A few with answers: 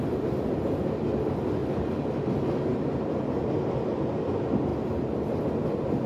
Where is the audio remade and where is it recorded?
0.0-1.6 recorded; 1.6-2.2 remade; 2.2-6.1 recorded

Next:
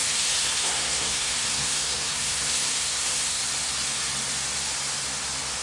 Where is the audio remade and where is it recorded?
0.0-3.4 remade; 3.4-5.6 recorded

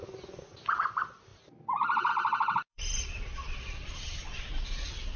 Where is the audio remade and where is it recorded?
0.0-2.7 recorded; 2.7-3.9 remade; 3.9-4.3 recorded; 4.3-5.2 remade

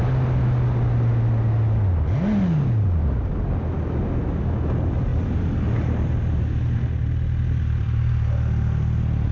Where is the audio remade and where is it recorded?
0.0-9.3 recorded

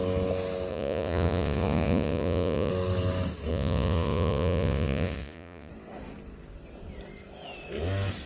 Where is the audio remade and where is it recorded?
0.0-0.7 recorded; 0.7-2.7 remade; 2.7-3.5 recorded; 3.5-5.7 remade; 5.7-8.3 recorded

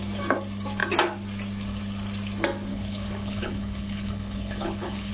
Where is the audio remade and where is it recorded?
0.0-2.7 recorded; 2.7-5.1 remade

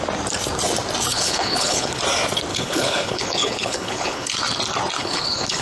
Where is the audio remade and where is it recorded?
0.0-1.1 recorded; 1.1-2.0 remade; 2.0-2.5 recorded; 2.5-4.3 remade; 4.3-5.0 recorded; 5.0-5.6 remade